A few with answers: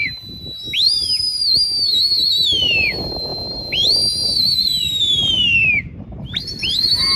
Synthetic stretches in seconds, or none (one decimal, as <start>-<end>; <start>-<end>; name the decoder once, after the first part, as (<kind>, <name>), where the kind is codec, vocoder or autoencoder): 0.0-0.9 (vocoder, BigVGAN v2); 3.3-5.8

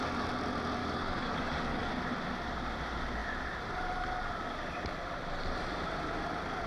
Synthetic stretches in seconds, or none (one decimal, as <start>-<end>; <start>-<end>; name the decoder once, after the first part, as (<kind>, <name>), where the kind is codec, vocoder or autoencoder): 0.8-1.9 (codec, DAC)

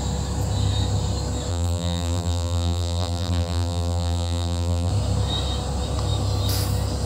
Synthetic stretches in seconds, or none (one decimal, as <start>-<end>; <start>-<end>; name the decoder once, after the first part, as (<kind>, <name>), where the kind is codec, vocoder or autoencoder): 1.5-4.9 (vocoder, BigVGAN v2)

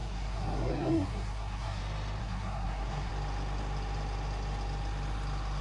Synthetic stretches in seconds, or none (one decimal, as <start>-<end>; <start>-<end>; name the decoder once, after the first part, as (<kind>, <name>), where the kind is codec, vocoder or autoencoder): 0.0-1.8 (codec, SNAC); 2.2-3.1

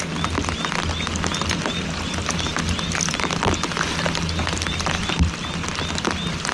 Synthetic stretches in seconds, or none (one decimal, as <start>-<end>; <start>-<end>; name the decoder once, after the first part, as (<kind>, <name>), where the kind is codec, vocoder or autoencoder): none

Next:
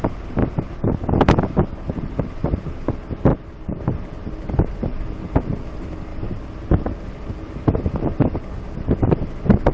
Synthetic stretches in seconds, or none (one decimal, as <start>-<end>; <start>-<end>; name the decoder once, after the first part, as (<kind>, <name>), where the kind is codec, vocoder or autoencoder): none

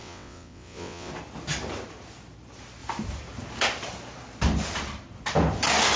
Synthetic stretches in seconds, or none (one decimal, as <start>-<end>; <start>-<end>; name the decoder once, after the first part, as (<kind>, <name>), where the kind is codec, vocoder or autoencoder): 0.0-1.1 (vocoder, WaveNeXt)